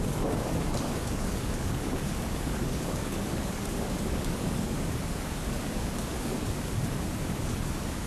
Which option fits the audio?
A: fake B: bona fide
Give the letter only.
A